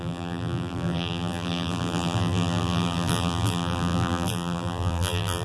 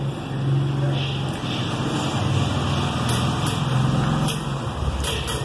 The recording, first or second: second